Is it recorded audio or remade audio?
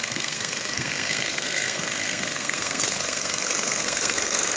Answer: remade